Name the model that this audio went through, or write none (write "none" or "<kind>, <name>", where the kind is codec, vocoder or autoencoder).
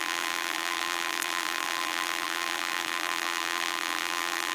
vocoder, BigVGAN v2